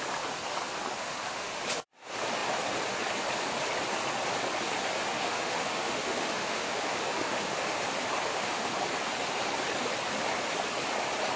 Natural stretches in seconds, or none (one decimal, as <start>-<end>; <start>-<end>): 0.0-1.0; 1.6-5.1; 7.8-8.3; 8.8-11.4